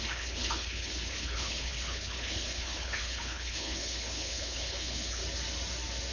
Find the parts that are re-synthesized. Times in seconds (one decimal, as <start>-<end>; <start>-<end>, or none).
0.0-5.2